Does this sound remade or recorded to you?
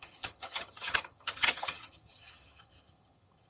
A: remade